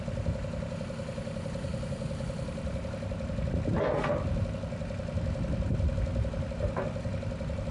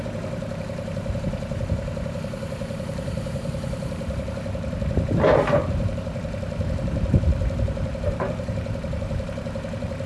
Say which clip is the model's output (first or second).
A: second